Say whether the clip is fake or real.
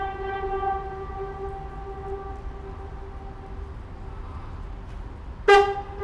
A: real